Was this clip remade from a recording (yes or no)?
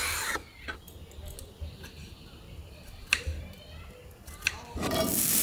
no